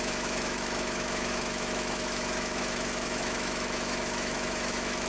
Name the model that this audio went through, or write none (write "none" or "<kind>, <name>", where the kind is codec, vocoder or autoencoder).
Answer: autoencoder, DAC-VAE